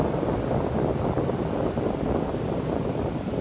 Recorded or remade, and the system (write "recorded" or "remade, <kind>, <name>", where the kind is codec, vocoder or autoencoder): recorded